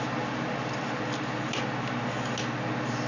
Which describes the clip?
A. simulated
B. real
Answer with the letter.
B